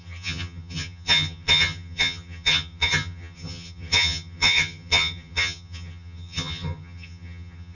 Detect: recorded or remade remade